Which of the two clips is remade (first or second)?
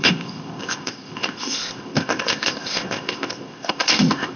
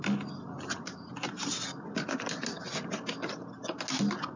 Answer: first